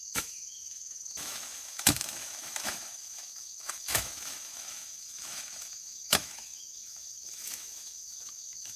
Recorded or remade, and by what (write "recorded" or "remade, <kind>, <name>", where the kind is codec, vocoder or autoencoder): remade, autoencoder, DAC-VAE